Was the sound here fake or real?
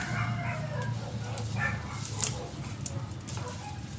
real